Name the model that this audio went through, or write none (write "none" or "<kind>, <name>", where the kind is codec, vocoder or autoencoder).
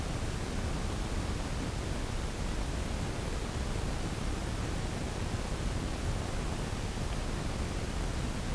none